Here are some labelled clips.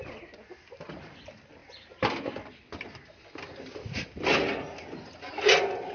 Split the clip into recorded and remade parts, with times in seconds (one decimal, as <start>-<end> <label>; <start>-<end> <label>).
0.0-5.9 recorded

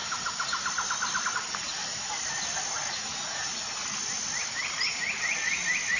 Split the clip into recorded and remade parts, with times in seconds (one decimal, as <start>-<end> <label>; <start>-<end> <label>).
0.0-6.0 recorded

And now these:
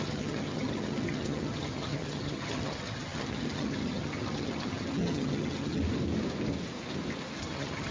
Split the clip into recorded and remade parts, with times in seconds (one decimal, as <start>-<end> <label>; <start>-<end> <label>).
0.0-5.8 remade; 5.8-7.4 recorded; 7.4-7.9 remade